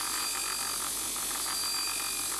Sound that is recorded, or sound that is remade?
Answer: recorded